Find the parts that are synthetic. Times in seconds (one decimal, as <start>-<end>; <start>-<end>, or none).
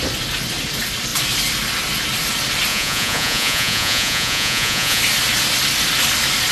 2.7-5.0